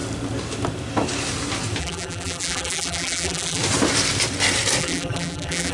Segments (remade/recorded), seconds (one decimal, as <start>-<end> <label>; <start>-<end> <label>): 0.0-1.8 recorded; 1.8-3.6 remade; 3.6-4.8 recorded; 4.8-5.7 remade